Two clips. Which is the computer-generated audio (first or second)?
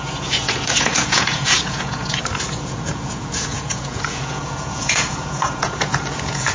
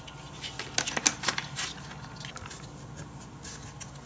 first